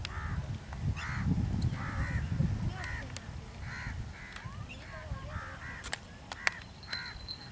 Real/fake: real